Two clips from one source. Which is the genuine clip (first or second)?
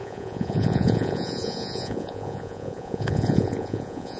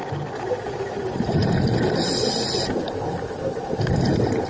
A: second